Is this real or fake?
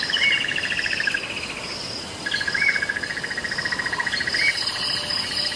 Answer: real